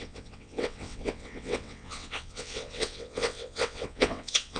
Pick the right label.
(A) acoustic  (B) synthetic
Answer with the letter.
B